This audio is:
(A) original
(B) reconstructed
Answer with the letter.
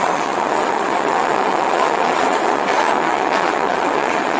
B